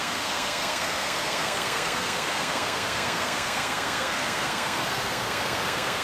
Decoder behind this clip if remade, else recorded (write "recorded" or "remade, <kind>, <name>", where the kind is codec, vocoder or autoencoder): remade, codec, SNAC